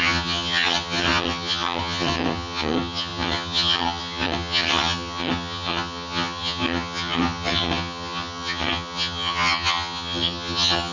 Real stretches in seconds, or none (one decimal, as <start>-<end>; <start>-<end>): none